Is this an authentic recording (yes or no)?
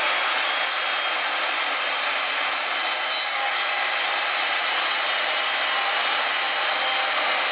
yes